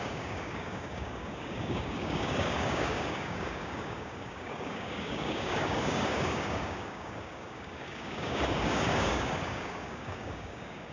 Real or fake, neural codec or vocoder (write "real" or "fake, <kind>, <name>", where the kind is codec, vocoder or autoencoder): fake, codec, DAC